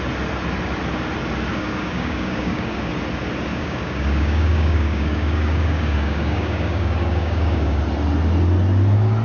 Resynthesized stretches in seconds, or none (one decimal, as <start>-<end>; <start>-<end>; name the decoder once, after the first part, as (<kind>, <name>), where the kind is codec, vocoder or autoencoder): 1.5-2.9 (codec, DAC); 3.5-7.8